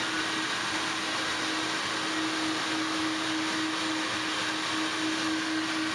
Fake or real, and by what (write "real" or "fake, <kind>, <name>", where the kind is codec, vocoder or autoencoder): real